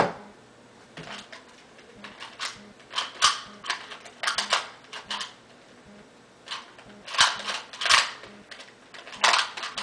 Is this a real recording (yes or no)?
yes